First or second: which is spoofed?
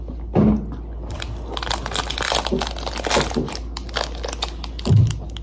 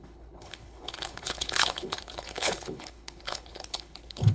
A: second